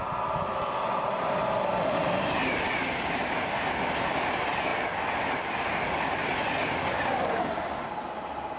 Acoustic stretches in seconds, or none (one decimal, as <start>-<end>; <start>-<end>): 0.0-8.6